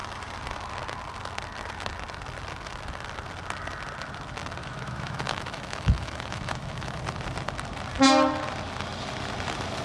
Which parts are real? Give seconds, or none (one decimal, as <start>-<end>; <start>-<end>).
0.0-4.6; 7.0-9.8